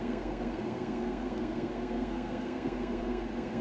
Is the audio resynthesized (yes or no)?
yes